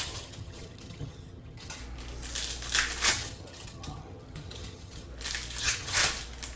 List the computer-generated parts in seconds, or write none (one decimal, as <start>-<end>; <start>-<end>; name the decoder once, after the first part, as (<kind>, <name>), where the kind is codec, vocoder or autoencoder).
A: 0.0-1.8 (vocoder, HiFi-GAN); 3.1-5.1; 5.6-6.0